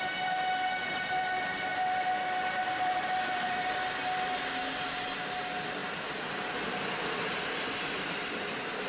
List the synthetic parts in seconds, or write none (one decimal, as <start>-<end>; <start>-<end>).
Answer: none

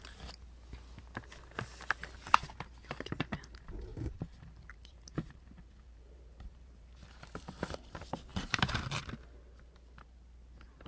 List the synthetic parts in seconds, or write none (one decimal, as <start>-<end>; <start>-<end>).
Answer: 3.9-7.9; 8.3-9.0

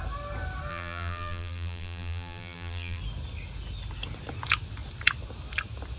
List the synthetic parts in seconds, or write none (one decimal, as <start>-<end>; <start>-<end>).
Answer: 0.7-3.0